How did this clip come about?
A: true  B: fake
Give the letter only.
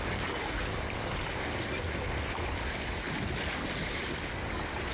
A